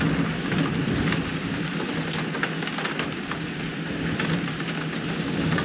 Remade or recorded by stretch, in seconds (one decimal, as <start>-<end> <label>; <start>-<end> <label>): 0.0-1.3 recorded; 1.3-1.9 remade; 1.9-5.6 recorded